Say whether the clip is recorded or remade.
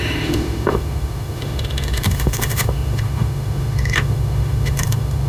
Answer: remade